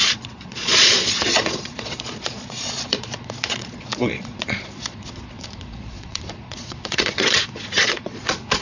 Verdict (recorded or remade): remade